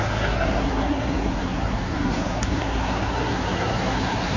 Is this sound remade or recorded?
remade